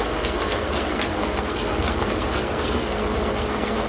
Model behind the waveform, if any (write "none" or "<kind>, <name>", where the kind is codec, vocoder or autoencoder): codec, SNAC